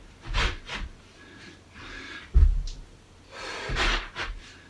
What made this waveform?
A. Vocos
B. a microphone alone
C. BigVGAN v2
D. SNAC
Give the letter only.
B